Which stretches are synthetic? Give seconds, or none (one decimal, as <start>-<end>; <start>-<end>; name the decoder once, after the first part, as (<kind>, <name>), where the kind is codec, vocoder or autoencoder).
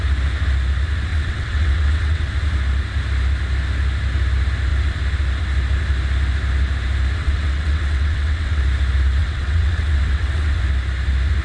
1.1-2.3 (vocoder, WaveNeXt); 7.2-8.6; 9.2-10.6